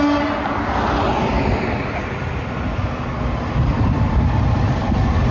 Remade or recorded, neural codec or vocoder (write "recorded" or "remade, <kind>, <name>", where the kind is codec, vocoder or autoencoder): recorded